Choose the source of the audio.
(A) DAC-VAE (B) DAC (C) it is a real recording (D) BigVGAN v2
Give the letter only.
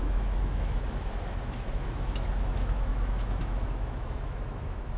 A